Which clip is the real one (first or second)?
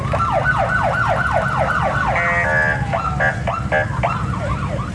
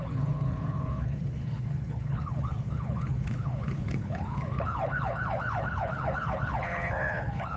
first